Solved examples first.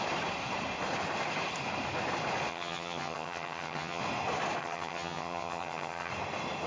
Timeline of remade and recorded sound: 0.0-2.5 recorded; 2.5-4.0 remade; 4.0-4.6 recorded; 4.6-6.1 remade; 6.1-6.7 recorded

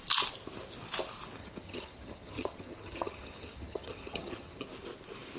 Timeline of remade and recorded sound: 0.0-1.4 recorded; 1.4-4.6 remade; 4.6-5.4 recorded

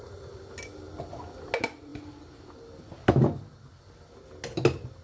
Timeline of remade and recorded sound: 0.0-5.0 recorded

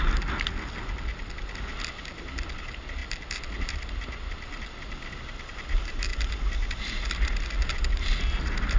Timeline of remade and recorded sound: 0.0-8.8 recorded

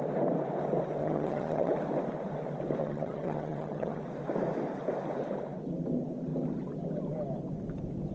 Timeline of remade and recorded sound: 0.0-1.0 recorded; 1.0-1.7 remade; 1.7-2.8 recorded; 2.8-4.0 remade; 4.0-8.1 recorded